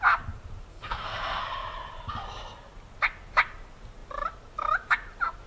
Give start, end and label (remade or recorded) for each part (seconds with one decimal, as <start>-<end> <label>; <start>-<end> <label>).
0.0-0.7 recorded; 0.7-1.4 remade; 1.4-5.5 recorded